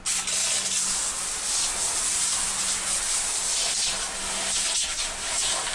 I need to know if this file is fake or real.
real